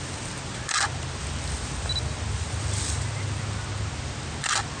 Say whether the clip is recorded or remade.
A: recorded